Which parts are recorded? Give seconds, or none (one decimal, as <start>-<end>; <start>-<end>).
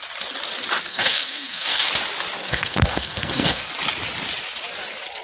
0.0-0.9; 1.9-2.4; 3.7-5.2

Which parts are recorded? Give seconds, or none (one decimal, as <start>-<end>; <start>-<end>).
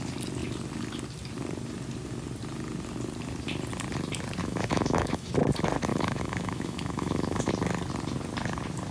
0.0-4.4; 5.3-5.9; 7.5-8.9